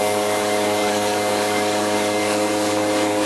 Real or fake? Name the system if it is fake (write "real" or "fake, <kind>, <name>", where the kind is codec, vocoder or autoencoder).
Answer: fake, codec, DAC